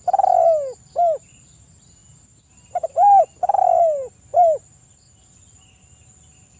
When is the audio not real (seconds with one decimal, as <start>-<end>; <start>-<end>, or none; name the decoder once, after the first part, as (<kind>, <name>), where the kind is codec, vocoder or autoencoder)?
none

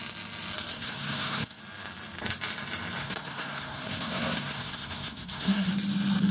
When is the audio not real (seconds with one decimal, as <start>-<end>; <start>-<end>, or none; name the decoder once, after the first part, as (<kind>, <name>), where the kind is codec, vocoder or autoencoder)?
0.7-1.6 (codec, SNAC); 3.0-5.7